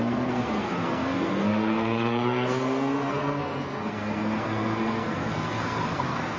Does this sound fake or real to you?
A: fake